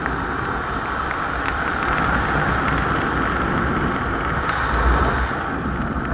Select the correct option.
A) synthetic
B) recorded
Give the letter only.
B